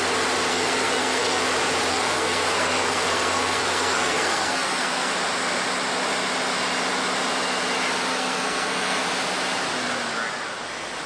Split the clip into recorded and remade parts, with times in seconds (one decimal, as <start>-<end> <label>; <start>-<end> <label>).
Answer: 0.0-0.5 recorded; 0.5-1.4 remade; 1.4-1.9 recorded; 1.9-5.1 remade; 5.1-8.1 recorded; 8.1-9.0 remade; 9.0-11.1 recorded

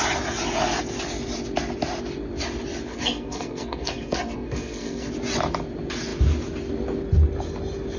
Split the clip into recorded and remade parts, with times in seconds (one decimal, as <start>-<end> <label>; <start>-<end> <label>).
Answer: 0.0-2.9 recorded; 2.9-5.1 remade; 5.1-8.0 recorded

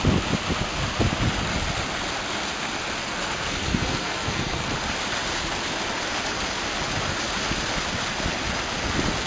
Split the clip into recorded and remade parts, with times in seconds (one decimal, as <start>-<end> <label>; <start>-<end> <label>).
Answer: 0.0-3.0 recorded; 3.0-4.7 remade; 4.7-9.3 recorded